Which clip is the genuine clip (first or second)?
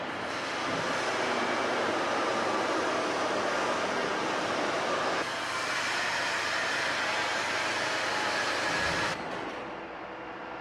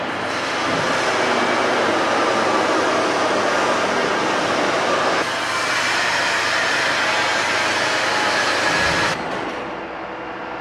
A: second